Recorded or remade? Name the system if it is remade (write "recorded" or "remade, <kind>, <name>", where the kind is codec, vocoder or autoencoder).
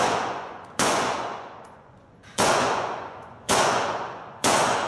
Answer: remade, vocoder, Vocos